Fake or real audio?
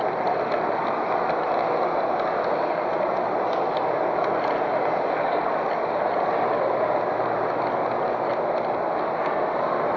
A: real